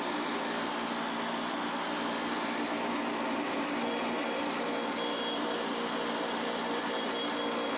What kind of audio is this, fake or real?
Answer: real